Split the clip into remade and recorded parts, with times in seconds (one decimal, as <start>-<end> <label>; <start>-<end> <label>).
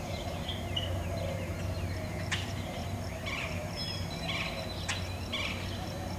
0.0-1.5 remade; 1.5-2.1 recorded; 2.1-3.8 remade; 3.8-6.2 recorded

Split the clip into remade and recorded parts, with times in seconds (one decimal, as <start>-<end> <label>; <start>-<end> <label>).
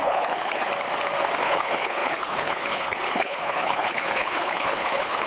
0.0-0.7 remade; 0.7-1.4 recorded; 1.4-5.3 remade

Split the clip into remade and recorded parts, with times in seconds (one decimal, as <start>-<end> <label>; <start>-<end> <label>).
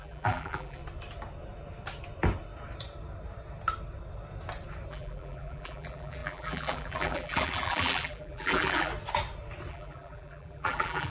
0.0-0.8 remade; 0.8-4.9 recorded; 4.9-8.9 remade; 8.9-9.7 recorded; 9.7-11.1 remade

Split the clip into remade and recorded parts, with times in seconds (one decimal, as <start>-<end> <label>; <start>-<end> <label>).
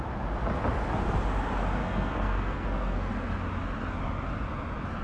0.0-1.8 recorded; 1.8-3.1 remade; 3.1-5.0 recorded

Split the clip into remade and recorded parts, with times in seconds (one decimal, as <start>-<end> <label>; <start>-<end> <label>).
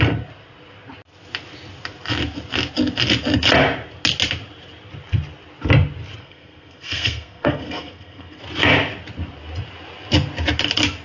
0.0-6.2 recorded; 6.2-8.4 remade; 8.4-11.0 recorded